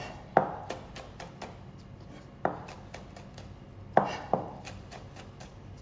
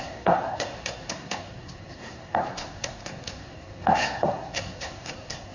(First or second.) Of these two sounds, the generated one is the second